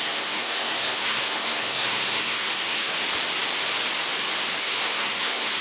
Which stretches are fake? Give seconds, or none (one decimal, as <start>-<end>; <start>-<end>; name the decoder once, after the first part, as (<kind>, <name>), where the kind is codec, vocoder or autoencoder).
0.0-2.9 (codec, SNAC); 4.6-5.6